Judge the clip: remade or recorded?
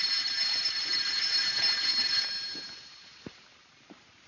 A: remade